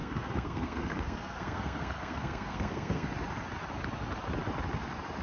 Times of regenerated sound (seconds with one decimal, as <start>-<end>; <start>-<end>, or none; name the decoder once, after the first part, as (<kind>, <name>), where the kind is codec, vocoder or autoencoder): 0.0-3.1 (codec, SNAC)